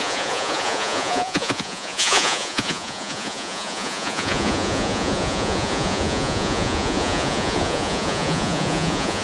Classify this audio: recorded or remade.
remade